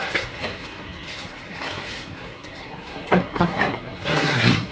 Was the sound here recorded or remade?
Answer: remade